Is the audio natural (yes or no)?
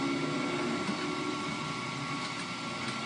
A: yes